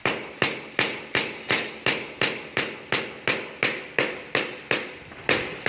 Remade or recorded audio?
recorded